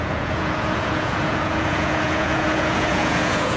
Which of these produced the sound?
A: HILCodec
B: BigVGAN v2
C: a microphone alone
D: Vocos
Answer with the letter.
D